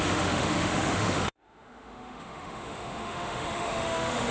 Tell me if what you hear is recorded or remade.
remade